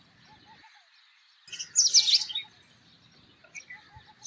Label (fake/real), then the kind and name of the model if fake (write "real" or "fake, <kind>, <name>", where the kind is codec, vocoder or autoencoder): real